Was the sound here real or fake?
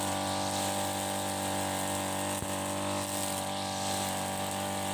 real